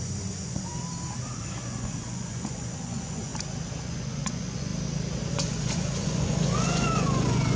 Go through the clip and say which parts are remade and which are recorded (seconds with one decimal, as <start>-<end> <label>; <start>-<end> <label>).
0.0-0.7 remade; 0.7-1.4 recorded; 1.4-3.3 remade; 3.3-3.8 recorded; 3.8-4.7 remade; 4.7-5.3 recorded; 5.3-7.6 remade